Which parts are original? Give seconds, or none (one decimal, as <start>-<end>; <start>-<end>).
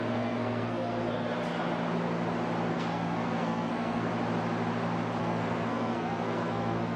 0.9-2.7; 4.1-5.2